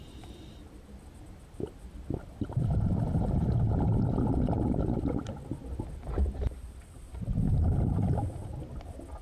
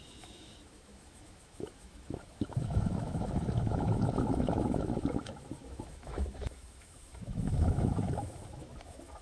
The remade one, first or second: second